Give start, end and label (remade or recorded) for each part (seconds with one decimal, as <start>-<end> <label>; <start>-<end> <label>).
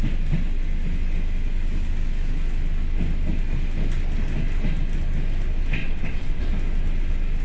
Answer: 0.0-5.8 recorded; 5.8-6.4 remade; 6.4-7.4 recorded